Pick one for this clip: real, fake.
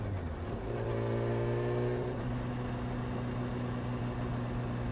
real